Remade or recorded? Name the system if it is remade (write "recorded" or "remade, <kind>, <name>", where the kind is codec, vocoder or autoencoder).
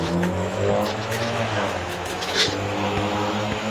remade, autoencoder, DAC-VAE